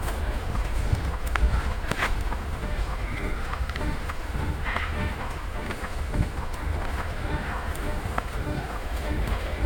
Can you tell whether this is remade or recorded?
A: remade